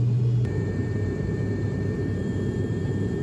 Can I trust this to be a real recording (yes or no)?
no